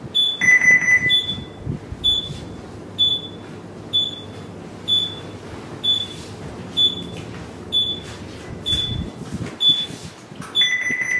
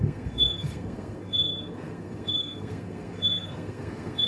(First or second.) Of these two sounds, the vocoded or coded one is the second